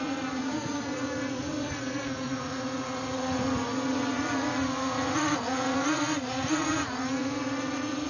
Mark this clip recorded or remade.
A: remade